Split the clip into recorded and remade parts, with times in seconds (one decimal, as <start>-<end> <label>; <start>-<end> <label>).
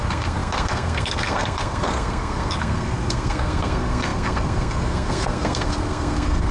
0.0-6.5 remade